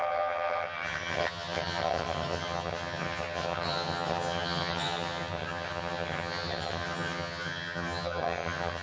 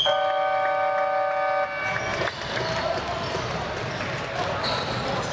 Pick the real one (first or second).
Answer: second